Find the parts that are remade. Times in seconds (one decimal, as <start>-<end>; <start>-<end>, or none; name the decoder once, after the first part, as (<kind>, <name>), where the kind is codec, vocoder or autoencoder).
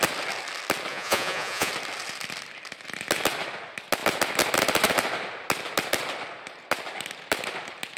0.9-1.7 (vocoder, Vocos)